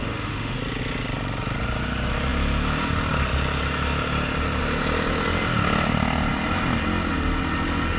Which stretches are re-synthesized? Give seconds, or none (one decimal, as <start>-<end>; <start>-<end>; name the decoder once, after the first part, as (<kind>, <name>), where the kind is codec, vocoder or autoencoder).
0.0-0.6 (autoencoder, DAC-VAE)